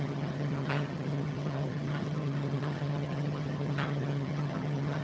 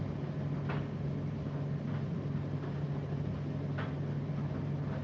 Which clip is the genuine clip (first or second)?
second